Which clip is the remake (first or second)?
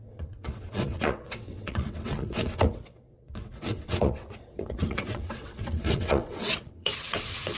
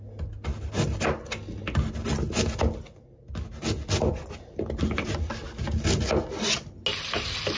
first